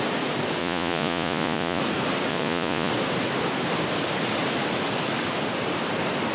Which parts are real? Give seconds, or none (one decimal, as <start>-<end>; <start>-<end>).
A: 0.0-0.6; 1.8-2.3; 2.9-6.3